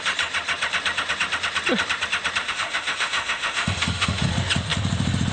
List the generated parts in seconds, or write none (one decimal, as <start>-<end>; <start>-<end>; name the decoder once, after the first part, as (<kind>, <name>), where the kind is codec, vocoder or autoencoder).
2.4-4.3 (autoencoder, DAC-VAE)